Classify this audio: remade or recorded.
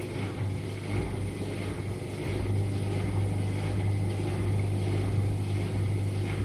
recorded